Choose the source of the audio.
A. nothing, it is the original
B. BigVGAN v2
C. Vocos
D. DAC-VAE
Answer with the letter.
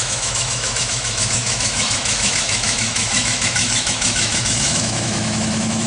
D